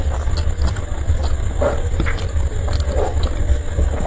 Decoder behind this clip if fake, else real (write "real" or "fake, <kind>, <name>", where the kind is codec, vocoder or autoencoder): real